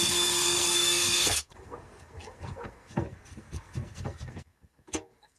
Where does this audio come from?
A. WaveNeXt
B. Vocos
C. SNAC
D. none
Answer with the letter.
C